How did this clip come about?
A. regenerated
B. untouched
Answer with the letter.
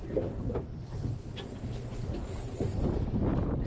B